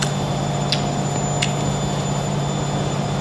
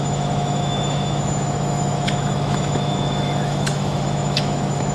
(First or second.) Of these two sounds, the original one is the first